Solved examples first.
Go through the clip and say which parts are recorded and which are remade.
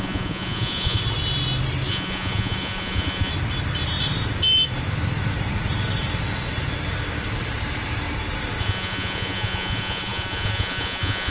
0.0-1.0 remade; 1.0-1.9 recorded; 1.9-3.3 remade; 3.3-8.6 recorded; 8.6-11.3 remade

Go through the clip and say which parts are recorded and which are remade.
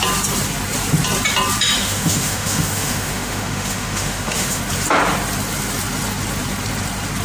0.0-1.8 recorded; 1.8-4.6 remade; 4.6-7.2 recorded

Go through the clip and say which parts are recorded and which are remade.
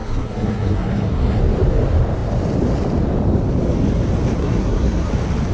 0.0-1.4 remade; 1.4-4.4 recorded; 4.4-5.1 remade; 5.1-5.5 recorded